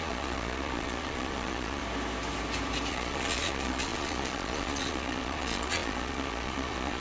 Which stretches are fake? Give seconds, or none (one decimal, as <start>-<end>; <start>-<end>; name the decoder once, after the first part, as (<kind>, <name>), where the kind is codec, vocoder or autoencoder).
0.0-1.8 (vocoder, Vocos); 2.9-7.0